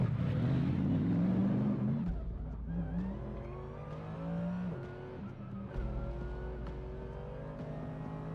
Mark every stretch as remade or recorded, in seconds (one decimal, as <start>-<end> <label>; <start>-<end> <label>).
0.0-8.3 recorded